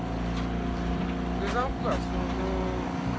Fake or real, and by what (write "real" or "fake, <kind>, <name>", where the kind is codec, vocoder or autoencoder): real